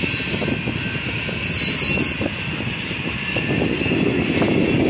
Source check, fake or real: real